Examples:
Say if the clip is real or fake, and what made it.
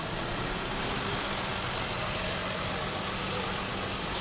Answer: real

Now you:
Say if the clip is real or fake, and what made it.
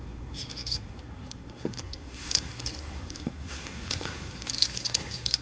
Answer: fake, codec, SNAC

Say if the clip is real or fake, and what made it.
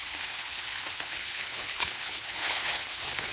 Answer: fake, codec, HILCodec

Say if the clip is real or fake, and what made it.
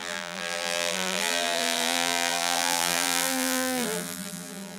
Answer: fake, vocoder, BigVGAN v2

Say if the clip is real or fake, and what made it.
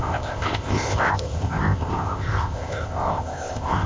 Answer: fake, codec, ZipCodec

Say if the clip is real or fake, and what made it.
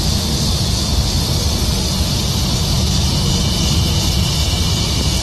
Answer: real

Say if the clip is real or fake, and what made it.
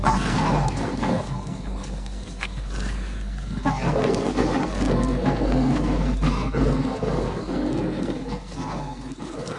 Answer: fake, codec, SNAC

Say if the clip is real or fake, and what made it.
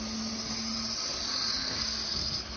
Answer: real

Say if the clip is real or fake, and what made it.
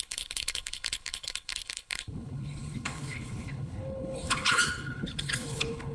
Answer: fake, codec, HILCodec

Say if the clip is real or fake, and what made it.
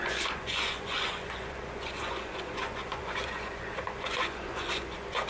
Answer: fake, vocoder, Vocos